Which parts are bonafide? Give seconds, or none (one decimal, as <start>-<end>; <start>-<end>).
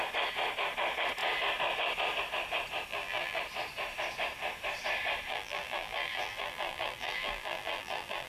0.0-2.9; 3.4-5.3